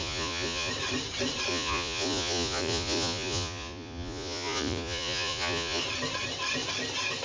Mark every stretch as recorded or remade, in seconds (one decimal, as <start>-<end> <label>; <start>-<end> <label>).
0.0-0.7 remade; 0.7-1.5 recorded; 1.5-5.8 remade; 5.8-7.2 recorded